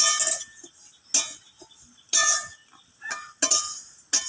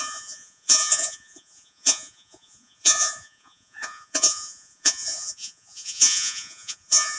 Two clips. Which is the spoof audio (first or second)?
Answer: second